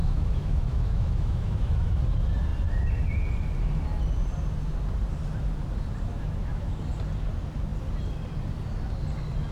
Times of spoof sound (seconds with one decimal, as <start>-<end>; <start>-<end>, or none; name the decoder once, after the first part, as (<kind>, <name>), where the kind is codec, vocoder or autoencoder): 0.0-2.0 (autoencoder, DAC-VAE); 6.1-6.7